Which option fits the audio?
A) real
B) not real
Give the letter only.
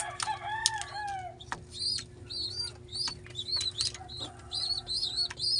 A